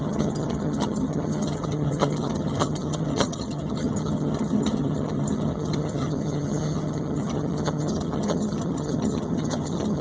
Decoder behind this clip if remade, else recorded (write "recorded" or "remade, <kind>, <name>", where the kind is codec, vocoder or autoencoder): remade, vocoder, HiFi-GAN